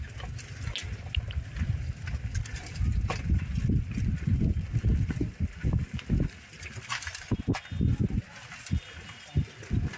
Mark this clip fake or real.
real